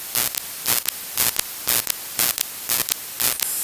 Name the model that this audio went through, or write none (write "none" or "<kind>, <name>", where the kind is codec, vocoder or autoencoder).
vocoder, BigVGAN v2